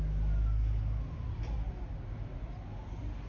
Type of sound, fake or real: real